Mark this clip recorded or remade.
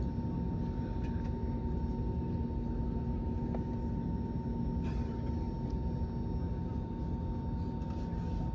recorded